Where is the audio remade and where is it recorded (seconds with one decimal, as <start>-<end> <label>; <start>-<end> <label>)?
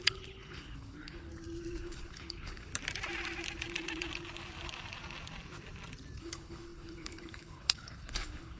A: 0.0-1.3 remade; 1.3-1.8 recorded; 1.8-2.7 remade; 2.7-6.2 recorded; 6.2-8.6 remade